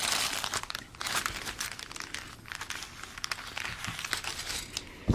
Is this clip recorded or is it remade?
recorded